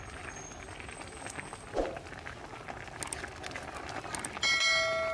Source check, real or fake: real